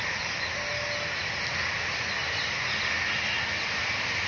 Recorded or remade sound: recorded